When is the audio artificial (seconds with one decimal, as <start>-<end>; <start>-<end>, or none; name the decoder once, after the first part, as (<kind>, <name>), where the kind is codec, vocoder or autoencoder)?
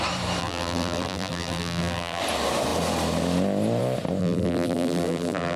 0.4-2.2 (vocoder, BigVGAN v2); 4.2-5.6